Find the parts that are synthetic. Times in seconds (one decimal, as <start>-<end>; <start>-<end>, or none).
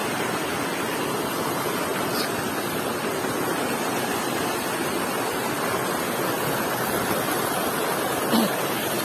none